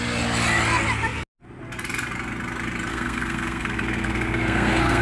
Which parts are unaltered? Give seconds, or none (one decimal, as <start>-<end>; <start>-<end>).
0.0-2.9